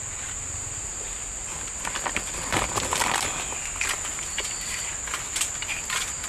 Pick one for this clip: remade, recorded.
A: recorded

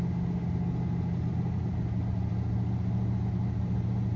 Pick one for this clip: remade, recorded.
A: recorded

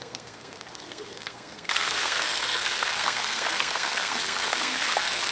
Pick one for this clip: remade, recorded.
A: remade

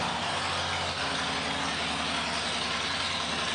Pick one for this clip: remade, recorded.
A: recorded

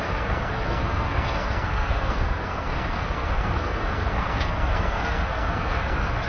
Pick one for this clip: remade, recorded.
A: remade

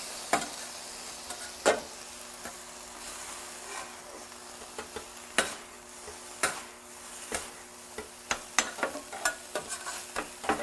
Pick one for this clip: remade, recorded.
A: recorded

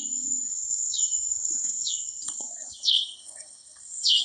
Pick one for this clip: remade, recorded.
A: remade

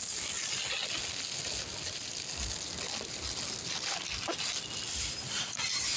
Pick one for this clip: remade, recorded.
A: recorded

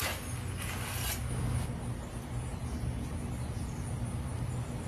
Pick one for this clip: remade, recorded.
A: recorded